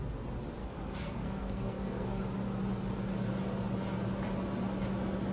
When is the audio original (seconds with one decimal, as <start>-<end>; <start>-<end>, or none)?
0.0-0.6; 2.2-5.3